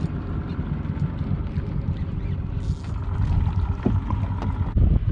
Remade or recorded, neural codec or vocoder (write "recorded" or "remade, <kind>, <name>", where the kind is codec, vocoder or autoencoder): recorded